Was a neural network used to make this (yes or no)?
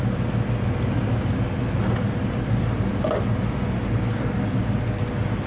no